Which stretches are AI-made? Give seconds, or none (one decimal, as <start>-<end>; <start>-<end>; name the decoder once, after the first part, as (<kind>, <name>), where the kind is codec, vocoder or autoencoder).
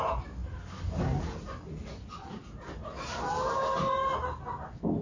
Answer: none